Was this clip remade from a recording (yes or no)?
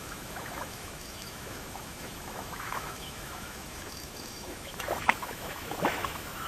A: yes